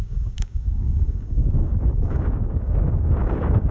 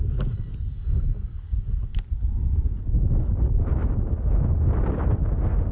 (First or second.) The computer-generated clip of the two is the first